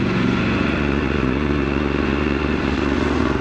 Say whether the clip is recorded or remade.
remade